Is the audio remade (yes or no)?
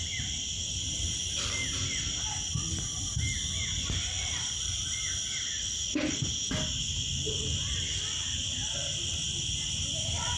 no